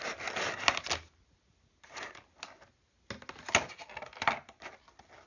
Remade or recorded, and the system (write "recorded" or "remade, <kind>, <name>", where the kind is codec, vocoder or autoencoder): recorded